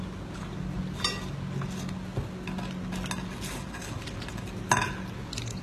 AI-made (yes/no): no